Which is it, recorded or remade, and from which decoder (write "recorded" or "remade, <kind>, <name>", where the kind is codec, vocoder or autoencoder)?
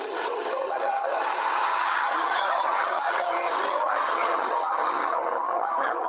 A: remade, vocoder, HiFi-GAN